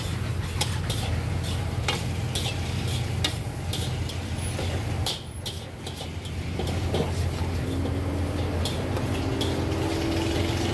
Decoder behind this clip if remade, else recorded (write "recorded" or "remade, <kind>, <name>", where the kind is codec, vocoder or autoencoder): recorded